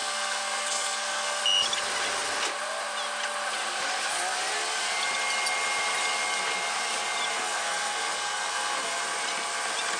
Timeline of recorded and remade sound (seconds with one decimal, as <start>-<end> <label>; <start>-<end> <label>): 0.0-1.4 remade; 1.4-7.3 recorded; 7.3-9.0 remade; 9.0-10.0 recorded